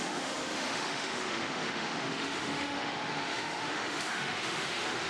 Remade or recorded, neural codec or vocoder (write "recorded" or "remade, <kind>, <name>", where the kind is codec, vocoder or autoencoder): remade, autoencoder, DAC-VAE